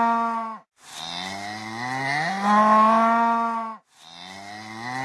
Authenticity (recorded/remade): recorded